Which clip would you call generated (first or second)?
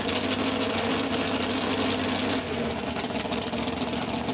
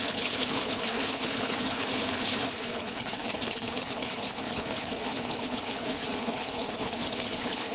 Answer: second